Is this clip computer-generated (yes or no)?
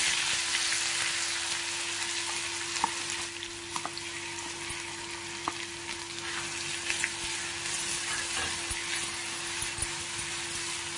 no